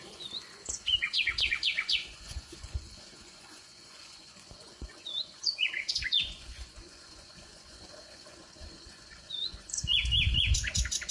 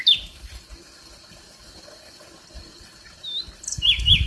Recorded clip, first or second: second